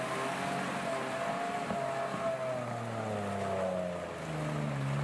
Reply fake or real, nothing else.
real